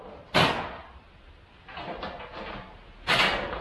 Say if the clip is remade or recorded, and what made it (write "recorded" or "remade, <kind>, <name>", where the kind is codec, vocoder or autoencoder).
recorded